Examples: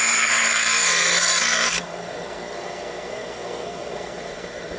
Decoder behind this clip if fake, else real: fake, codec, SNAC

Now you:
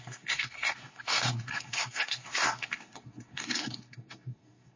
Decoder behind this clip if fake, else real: fake, codec, SNAC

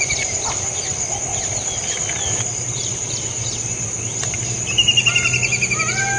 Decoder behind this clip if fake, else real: real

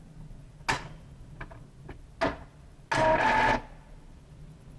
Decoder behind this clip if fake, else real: real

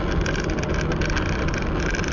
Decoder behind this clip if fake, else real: real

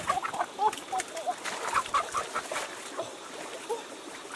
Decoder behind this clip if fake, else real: real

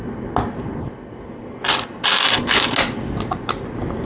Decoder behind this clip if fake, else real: real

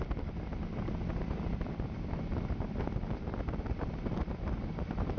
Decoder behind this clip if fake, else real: real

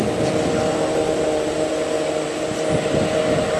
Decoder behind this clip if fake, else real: real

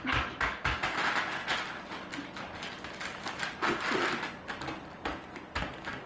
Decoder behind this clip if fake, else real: real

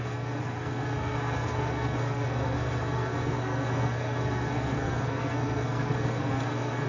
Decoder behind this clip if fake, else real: fake, codec, SNAC